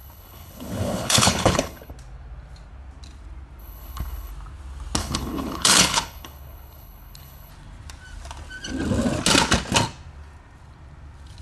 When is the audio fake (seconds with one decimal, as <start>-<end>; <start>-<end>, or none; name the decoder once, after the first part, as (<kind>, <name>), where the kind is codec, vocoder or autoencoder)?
0.0-1.9 (codec, HILCodec); 3.6-4.3; 5.0-7.5